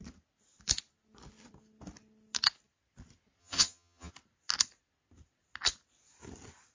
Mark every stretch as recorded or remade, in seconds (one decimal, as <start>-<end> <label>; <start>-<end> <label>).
0.0-3.4 recorded; 3.4-4.1 remade; 4.1-6.7 recorded